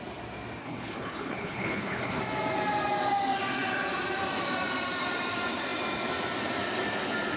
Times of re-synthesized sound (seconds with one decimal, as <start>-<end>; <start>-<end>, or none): 0.6-2.2